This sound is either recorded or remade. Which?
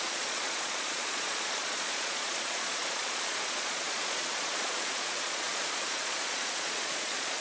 remade